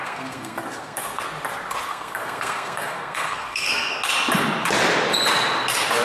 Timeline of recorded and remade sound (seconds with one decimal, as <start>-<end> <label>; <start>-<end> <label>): 0.0-1.2 remade; 1.2-1.9 recorded; 1.9-3.9 remade; 3.9-6.0 recorded